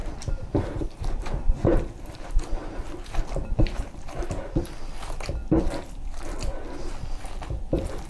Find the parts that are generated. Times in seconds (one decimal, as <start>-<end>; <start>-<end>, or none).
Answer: 0.0-4.3